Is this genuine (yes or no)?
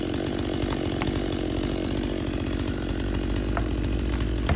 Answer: yes